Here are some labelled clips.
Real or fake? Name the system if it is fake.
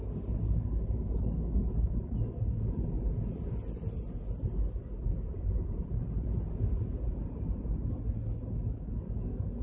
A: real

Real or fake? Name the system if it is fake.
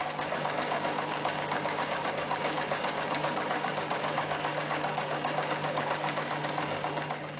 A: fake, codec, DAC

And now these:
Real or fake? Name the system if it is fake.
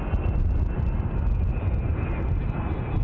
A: real